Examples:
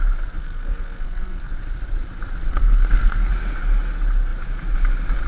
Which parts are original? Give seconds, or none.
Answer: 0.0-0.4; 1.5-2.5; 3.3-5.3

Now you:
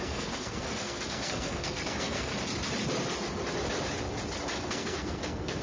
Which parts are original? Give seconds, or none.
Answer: 2.3-4.7

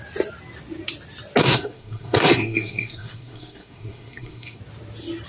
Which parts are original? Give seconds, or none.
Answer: 0.0-1.4; 4.6-5.3